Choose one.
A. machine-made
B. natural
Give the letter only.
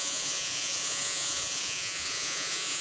A